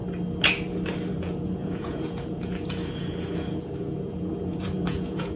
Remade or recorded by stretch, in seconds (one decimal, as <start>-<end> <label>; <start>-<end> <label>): 0.0-1.1 recorded; 1.1-5.4 remade